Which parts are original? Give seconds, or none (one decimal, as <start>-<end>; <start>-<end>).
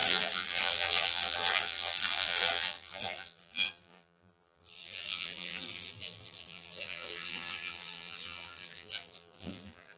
none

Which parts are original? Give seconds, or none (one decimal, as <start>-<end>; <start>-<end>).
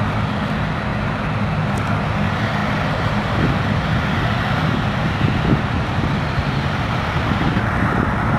0.0-2.6; 5.0-5.9; 7.5-8.4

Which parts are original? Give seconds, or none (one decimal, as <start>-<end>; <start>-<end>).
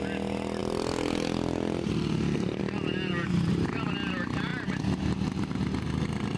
0.0-6.4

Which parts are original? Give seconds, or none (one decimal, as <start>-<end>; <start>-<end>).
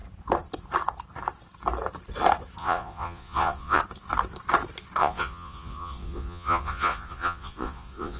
0.0-2.6; 3.8-5.0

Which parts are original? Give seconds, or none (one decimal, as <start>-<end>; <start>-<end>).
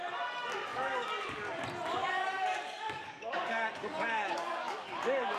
0.0-0.7; 1.6-2.0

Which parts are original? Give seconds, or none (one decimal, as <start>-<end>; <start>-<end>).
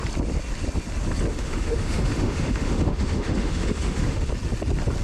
0.0-1.3; 4.3-5.0